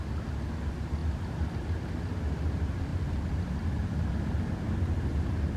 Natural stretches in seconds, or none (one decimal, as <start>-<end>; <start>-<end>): 0.0-2.9; 4.1-5.6